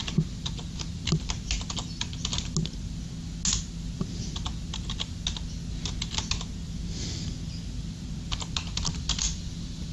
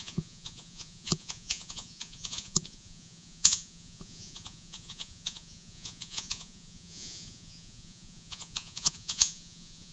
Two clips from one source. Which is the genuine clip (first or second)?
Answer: first